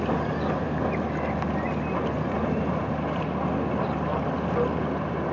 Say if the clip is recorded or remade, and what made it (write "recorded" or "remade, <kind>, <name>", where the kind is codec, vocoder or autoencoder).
recorded